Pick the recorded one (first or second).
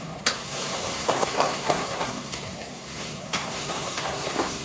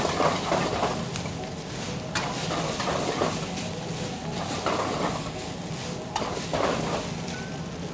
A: second